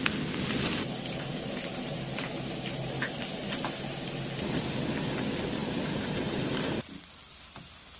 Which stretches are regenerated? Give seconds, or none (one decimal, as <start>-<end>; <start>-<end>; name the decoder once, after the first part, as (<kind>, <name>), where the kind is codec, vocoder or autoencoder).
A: none